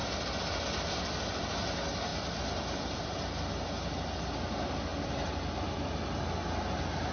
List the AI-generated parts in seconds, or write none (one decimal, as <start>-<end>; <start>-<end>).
0.0-0.9; 2.1-3.5; 4.9-5.9